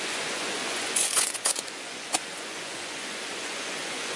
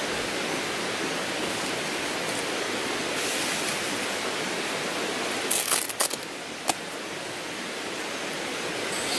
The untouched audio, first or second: second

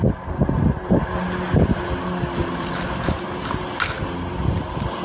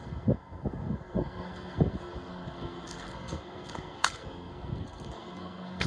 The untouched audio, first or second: first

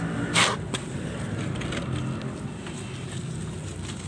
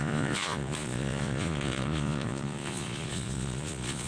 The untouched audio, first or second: first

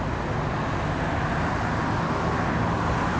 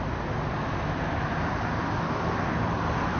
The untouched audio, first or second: first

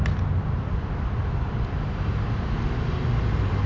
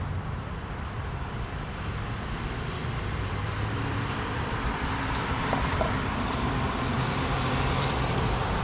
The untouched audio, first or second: first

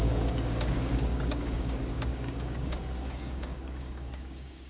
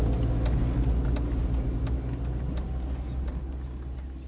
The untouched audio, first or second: second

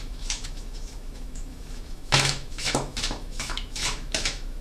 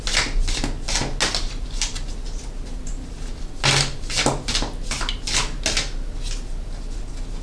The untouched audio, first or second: second